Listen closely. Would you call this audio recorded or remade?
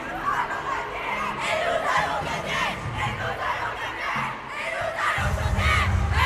recorded